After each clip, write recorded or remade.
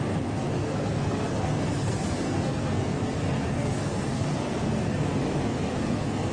remade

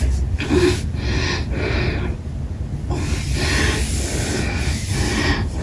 recorded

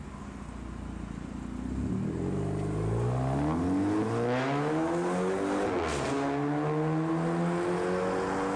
recorded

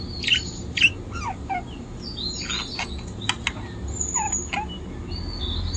recorded